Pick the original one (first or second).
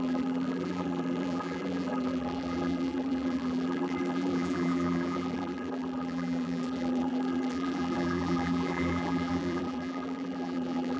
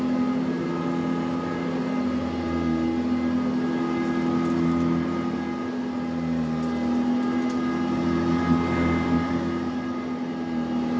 second